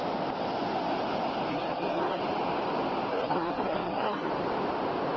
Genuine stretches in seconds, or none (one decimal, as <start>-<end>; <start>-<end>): 0.0-1.5; 2.2-3.1; 4.3-5.2